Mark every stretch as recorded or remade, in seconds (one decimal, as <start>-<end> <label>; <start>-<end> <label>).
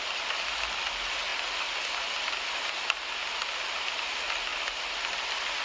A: 0.0-5.6 recorded